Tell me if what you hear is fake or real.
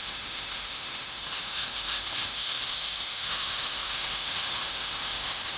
fake